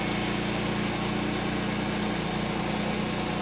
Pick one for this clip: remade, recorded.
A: recorded